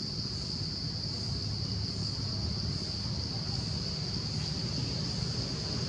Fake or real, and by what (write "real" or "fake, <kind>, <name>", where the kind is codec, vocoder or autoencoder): real